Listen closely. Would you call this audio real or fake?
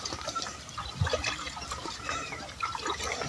fake